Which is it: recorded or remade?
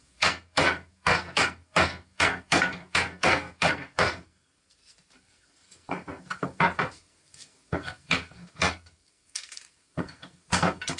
remade